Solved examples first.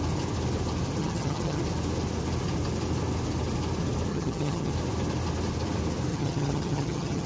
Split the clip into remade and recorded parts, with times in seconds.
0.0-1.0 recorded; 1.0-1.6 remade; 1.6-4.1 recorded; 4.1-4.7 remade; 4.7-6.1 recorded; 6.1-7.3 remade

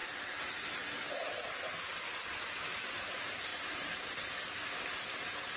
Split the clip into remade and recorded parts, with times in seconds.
0.0-5.6 recorded